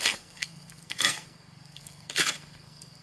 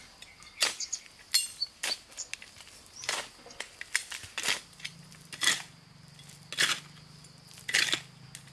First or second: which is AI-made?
first